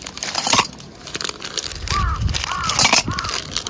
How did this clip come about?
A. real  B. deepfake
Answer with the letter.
A